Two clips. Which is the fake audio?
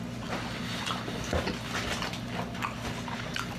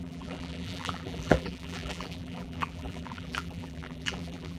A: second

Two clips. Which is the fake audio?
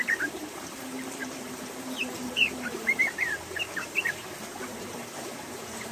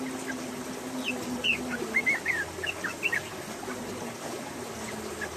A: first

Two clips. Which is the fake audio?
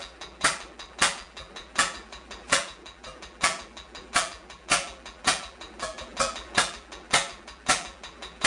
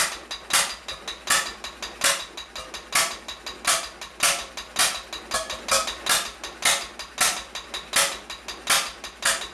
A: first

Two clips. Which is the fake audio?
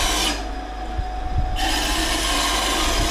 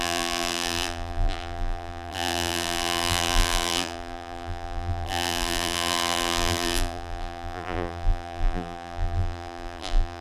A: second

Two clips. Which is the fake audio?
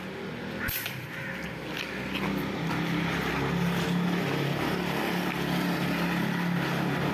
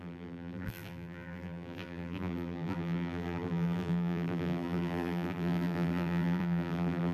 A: second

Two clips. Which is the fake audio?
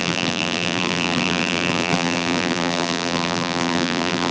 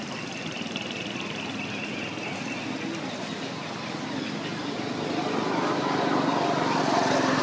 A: first